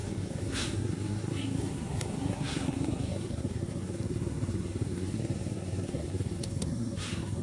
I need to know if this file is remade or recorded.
remade